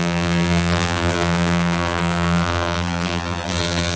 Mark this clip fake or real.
fake